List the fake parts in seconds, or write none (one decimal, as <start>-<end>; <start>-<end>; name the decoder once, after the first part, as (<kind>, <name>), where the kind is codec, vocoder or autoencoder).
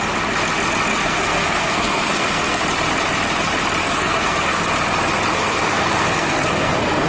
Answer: 0.9-2.6 (codec, SNAC); 3.8-4.6; 5.3-7.1